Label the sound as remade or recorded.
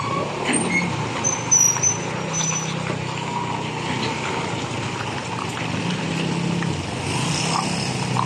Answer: recorded